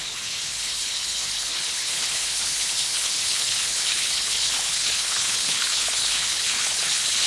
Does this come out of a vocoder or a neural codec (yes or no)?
yes